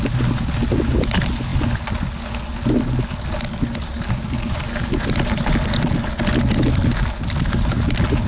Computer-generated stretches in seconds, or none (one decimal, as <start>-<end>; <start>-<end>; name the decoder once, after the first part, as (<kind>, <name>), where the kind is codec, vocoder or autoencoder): none